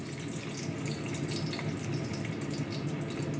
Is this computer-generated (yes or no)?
no